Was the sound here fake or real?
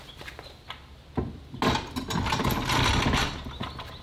real